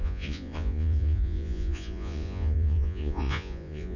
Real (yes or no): no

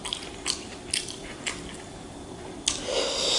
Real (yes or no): yes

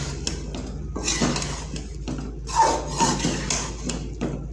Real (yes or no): yes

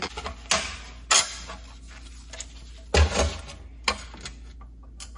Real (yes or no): yes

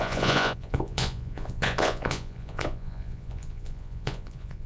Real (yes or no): no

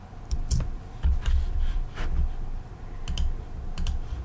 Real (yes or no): yes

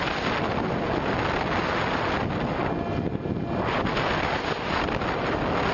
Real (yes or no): yes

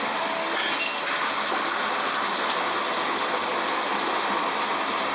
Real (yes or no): yes